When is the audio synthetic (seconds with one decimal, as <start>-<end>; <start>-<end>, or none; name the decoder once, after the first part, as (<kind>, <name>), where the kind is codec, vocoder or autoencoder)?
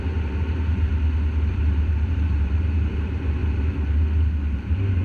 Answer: 0.0-0.9 (vocoder, BigVGAN v2); 1.5-3.4